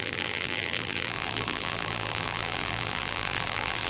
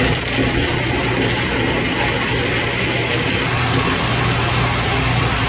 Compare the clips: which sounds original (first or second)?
second